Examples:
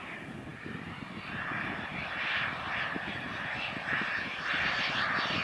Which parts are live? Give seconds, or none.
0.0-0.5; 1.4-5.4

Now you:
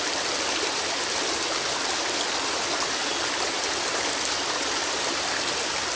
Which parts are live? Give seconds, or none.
3.0-3.5

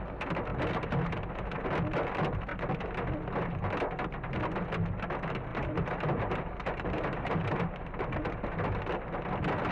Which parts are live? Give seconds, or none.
0.0-0.5; 1.1-5.5; 8.0-9.7